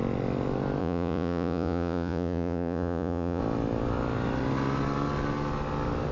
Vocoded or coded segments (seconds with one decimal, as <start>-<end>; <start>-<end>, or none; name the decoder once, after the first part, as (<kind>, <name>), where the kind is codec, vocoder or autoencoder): 0.8-3.4 (vocoder, Vocos)